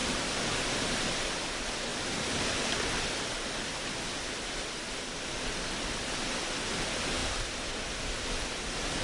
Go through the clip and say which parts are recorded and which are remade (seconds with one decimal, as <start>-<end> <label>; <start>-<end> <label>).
0.0-1.1 remade; 1.1-1.9 recorded; 1.9-3.7 remade; 3.7-7.2 recorded; 7.2-8.3 remade; 8.3-9.0 recorded